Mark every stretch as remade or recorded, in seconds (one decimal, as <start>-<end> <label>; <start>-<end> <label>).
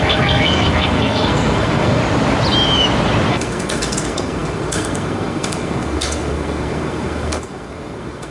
0.0-2.0 remade; 2.0-3.3 recorded; 3.3-8.3 remade